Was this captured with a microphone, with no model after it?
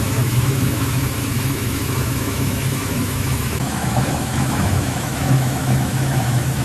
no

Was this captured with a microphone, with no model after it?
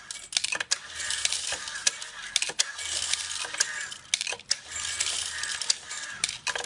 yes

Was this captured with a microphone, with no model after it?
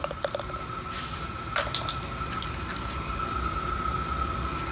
yes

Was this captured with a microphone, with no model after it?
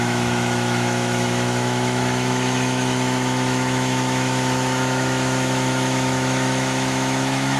no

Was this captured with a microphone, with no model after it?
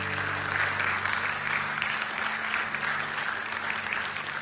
yes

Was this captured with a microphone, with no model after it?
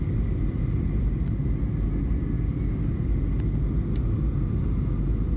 yes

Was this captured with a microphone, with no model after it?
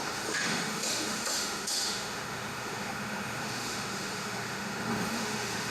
no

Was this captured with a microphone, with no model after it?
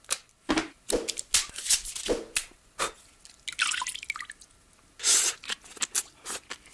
yes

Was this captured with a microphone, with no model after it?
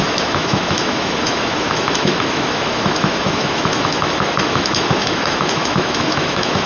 no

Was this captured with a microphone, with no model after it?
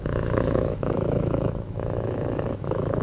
no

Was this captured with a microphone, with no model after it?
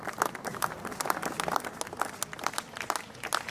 yes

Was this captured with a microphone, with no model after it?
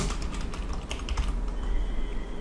yes